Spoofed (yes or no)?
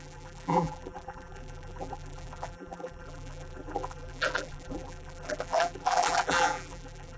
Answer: yes